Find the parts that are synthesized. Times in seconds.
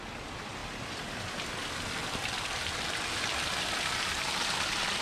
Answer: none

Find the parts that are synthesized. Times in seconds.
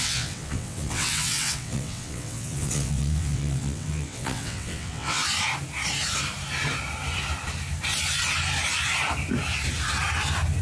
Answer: 0.0-5.2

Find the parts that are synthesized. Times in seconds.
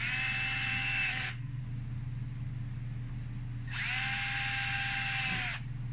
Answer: 0.7-1.6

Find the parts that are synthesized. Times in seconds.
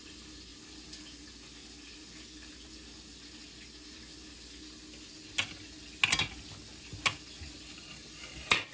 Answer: none